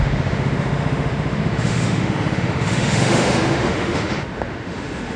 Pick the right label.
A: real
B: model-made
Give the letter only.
B